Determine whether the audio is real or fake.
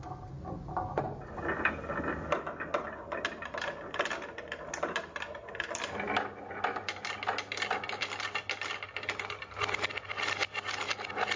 real